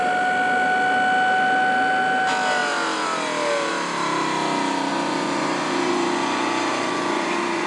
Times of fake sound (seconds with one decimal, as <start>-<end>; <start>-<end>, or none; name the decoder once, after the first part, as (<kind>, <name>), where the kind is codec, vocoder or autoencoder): 4.9-7.7 (vocoder, Vocos)